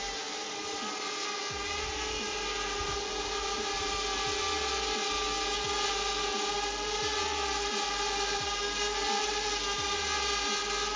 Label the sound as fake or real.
real